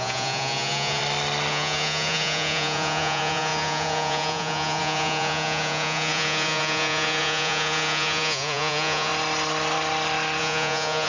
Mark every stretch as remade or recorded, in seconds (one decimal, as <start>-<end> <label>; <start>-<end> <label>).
0.0-1.0 remade; 1.0-1.5 recorded; 1.5-9.1 remade; 9.1-10.4 recorded; 10.4-11.1 remade